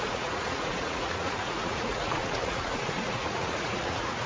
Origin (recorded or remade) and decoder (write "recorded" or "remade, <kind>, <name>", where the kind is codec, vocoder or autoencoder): remade, vocoder, Vocos